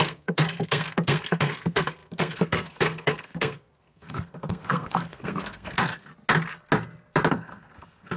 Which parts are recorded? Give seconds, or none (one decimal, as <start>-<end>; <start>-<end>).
6.1-7.3